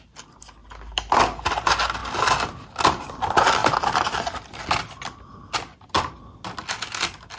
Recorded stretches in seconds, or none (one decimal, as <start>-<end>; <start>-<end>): 0.0-7.4